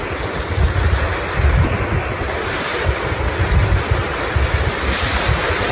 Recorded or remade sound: recorded